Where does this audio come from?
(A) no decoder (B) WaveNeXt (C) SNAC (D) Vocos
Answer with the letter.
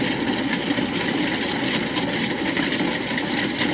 A